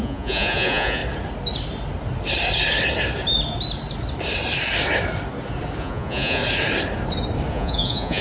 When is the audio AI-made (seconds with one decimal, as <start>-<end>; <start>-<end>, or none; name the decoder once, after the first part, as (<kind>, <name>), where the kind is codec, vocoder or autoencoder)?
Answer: 0.0-1.0 (vocoder, Vocos); 5.8-6.4; 7.5-8.2